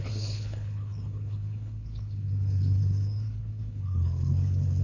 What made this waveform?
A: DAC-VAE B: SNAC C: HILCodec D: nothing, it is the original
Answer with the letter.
C